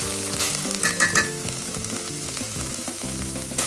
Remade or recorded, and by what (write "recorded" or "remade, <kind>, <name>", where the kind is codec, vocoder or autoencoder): remade, autoencoder, DAC-VAE